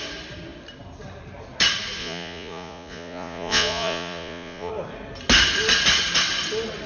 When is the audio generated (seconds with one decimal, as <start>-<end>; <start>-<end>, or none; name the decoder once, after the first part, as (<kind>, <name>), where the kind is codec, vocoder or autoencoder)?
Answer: 2.0-4.7 (vocoder, Vocos)

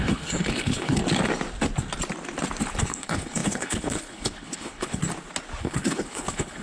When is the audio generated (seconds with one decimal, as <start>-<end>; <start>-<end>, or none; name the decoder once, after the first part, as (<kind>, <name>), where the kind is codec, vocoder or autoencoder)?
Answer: 0.0-1.0 (codec, HILCodec); 2.8-5.0; 5.6-6.6

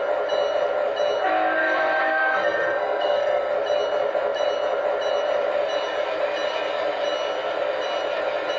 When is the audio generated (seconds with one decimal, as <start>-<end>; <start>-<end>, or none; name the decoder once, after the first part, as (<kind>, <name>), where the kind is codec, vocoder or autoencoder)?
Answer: 1.6-3.5 (codec, SNAC)

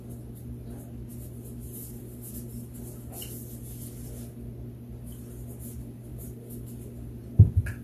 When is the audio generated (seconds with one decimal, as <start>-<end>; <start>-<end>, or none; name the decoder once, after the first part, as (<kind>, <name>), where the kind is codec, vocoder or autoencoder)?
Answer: none

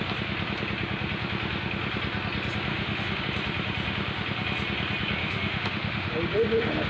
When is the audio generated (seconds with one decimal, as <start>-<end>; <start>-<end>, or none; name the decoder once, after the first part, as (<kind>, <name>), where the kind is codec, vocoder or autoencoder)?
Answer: 2.7-3.2 (autoencoder, DAC-VAE); 5.2-6.1

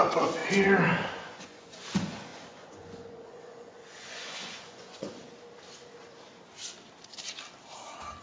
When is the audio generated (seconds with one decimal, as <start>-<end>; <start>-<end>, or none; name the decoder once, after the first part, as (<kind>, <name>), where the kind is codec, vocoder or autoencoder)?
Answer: 0.0-0.4 (vocoder, Vocos); 1.1-5.2